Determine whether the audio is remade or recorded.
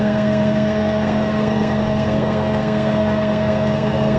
remade